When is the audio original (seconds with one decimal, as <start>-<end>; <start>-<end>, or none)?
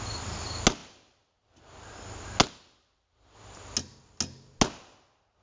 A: 0.0-5.4